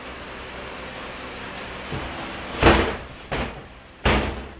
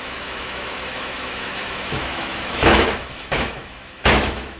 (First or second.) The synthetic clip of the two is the second